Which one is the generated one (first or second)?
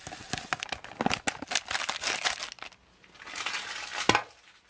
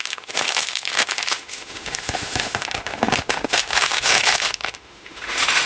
second